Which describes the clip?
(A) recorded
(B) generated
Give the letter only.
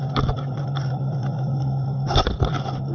B